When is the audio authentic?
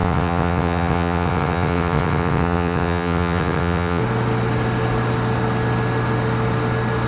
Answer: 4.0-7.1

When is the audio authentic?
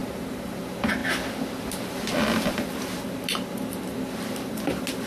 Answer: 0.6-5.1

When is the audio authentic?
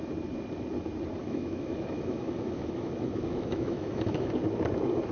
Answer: 0.0-1.2; 4.3-5.1